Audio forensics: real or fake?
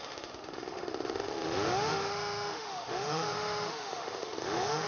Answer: fake